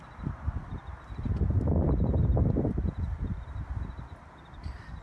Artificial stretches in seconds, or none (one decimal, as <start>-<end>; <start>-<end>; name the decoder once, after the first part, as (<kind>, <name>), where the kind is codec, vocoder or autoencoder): none